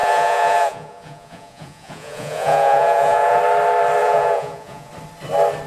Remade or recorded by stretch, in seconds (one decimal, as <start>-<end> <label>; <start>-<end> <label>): 0.0-3.4 remade; 3.4-4.0 recorded; 4.0-4.9 remade; 4.9-5.7 recorded